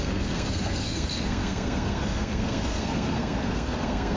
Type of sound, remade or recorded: remade